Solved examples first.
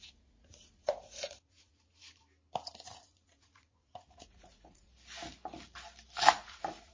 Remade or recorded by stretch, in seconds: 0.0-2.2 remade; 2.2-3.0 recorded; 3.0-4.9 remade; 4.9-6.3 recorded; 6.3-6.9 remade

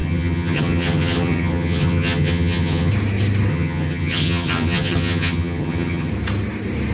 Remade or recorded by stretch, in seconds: 0.0-2.9 remade; 2.9-3.5 recorded; 3.5-6.1 remade; 6.1-6.9 recorded